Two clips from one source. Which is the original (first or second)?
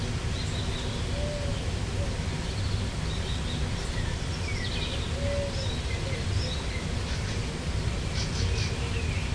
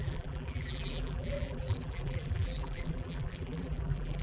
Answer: first